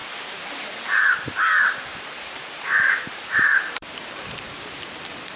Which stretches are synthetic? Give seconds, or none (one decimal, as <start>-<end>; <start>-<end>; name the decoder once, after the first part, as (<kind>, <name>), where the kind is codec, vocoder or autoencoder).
0.0-1.0 (vocoder, BigVGAN v2); 1.9-4.6